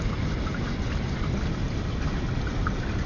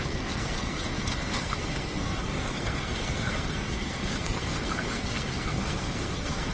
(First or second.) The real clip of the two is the first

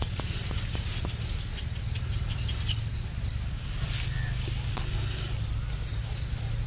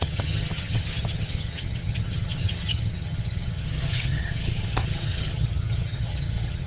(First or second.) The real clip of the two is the first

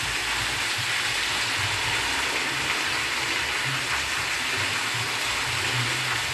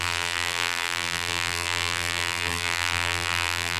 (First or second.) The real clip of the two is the first